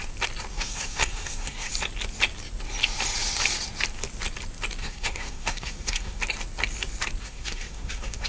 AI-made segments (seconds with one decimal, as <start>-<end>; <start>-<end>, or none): 0.5-1.7; 4.8-6.2; 7.2-8.3